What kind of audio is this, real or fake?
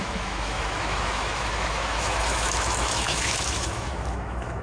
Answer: fake